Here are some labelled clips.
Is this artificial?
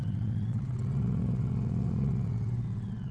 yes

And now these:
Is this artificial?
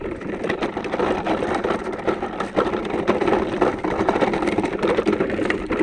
yes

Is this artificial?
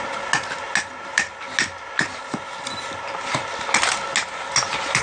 no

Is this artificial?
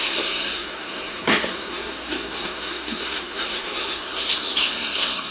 yes